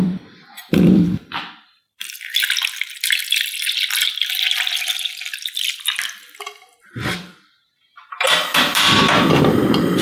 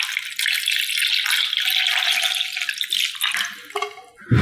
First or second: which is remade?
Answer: first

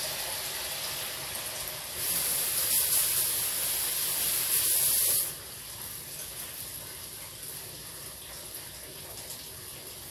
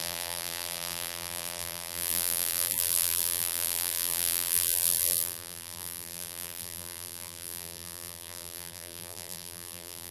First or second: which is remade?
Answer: second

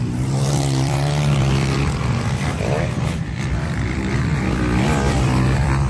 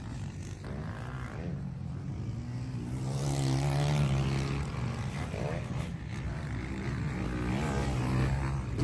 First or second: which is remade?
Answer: first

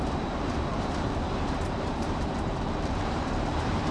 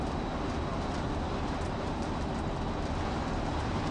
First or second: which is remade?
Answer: first